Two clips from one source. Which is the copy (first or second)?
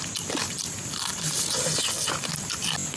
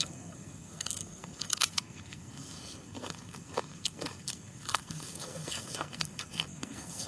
second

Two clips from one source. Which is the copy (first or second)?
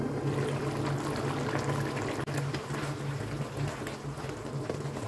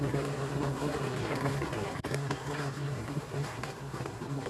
second